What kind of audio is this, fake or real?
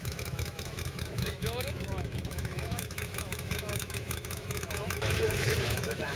fake